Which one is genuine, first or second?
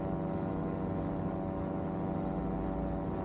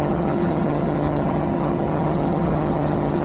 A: first